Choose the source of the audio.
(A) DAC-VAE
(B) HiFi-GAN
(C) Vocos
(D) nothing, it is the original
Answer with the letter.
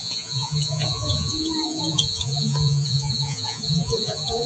C